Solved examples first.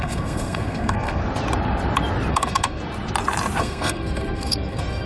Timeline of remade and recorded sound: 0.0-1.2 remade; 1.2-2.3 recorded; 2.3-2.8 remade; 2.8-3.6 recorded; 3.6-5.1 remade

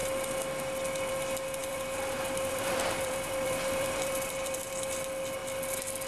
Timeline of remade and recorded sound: 0.0-1.6 recorded; 1.6-4.7 remade; 4.7-6.1 recorded

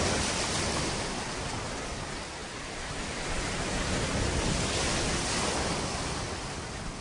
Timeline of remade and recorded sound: 0.0-7.0 recorded

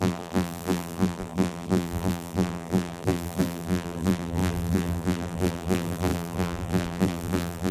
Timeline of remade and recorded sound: 0.0-7.7 remade

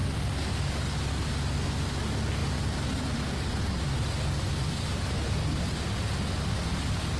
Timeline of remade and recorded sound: 0.0-7.2 recorded

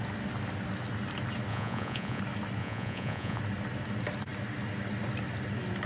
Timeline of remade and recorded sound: 0.0-1.5 recorded; 1.5-2.2 remade; 2.2-2.6 recorded; 2.6-3.4 remade; 3.4-5.9 recorded